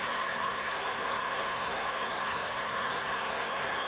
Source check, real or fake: fake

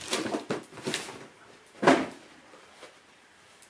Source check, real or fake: real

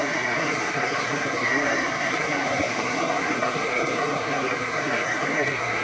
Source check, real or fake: fake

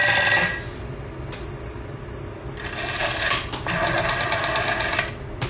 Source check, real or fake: real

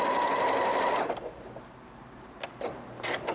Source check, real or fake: real